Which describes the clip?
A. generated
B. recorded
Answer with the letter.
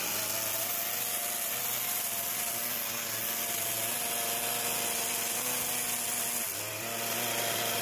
B